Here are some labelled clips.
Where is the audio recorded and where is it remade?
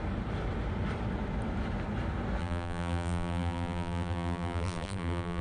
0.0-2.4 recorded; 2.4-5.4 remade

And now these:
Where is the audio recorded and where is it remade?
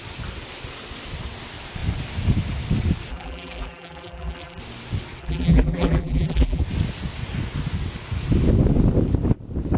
0.0-3.1 recorded; 3.1-4.6 remade; 4.6-5.2 recorded; 5.2-6.6 remade; 6.6-9.8 recorded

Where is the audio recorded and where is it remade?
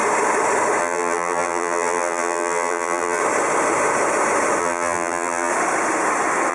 0.0-0.8 recorded; 0.8-3.2 remade; 3.2-4.6 recorded; 4.6-5.5 remade; 5.5-6.5 recorded